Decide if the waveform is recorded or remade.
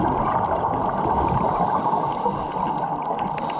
recorded